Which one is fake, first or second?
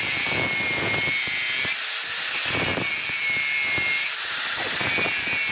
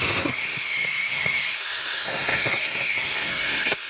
second